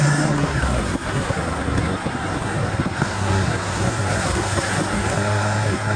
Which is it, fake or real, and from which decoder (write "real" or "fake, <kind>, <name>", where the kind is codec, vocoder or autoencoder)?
fake, codec, SNAC